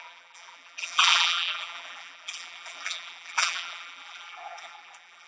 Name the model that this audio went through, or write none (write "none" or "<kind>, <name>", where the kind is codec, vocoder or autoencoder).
vocoder, BigVGAN v2